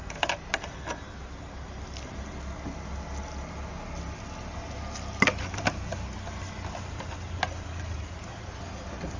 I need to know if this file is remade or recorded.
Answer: recorded